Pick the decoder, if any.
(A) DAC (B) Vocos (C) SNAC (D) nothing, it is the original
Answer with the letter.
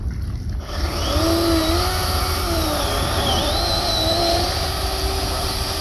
D